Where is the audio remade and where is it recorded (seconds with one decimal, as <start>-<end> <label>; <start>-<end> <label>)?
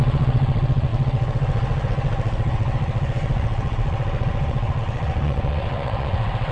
0.0-6.5 remade